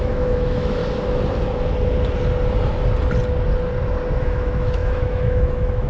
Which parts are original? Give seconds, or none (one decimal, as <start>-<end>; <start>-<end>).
0.8-4.2